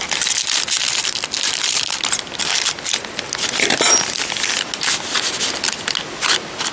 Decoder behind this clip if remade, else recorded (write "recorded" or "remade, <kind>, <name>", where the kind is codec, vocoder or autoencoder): recorded